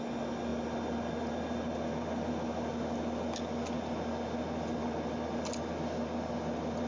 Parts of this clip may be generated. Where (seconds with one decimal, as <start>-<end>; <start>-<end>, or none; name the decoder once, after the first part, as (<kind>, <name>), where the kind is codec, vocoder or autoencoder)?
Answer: none